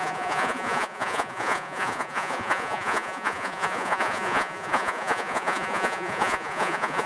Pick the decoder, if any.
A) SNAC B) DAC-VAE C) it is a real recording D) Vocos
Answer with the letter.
D